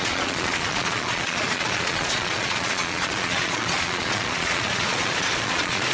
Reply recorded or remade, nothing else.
remade